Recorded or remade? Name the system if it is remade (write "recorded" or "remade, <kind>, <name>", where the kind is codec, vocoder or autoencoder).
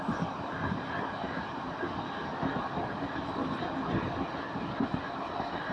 recorded